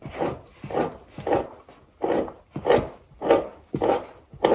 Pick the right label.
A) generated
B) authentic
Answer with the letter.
B